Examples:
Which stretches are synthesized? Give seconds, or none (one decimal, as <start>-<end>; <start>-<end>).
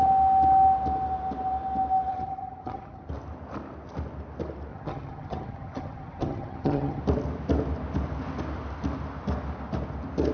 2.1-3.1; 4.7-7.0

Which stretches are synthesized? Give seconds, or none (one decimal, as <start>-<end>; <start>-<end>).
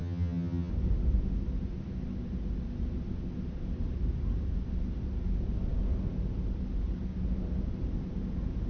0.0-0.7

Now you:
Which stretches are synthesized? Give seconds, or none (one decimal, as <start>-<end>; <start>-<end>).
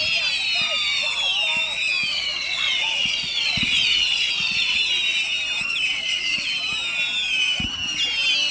2.1-4.8; 5.9-6.5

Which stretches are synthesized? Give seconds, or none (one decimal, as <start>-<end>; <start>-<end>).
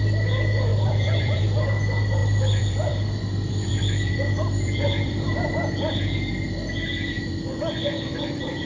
0.7-1.4; 2.2-5.5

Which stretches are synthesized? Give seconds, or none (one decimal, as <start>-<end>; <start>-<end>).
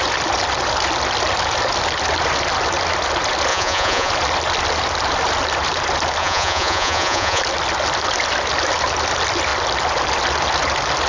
3.5-4.1; 6.2-7.4